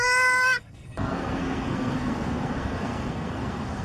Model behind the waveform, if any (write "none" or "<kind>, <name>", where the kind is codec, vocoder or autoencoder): codec, SNAC